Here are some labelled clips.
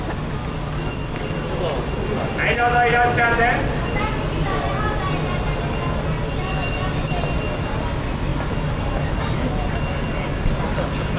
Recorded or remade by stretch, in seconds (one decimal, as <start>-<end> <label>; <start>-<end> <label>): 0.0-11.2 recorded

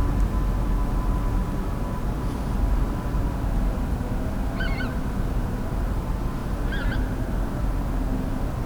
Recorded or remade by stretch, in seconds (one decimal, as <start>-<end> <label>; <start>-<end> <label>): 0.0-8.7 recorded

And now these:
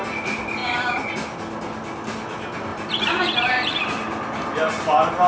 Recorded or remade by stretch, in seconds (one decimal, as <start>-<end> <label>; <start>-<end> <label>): 0.0-0.6 recorded; 0.6-1.1 remade; 1.1-2.7 recorded; 2.7-3.8 remade; 3.8-5.3 recorded